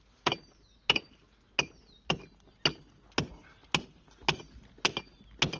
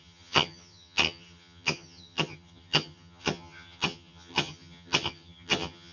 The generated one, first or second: second